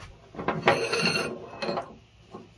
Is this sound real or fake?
real